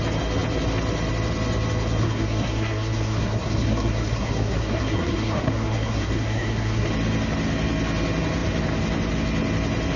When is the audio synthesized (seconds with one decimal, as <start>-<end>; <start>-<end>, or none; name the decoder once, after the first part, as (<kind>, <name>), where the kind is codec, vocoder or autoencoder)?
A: 2.0-6.9 (codec, SNAC)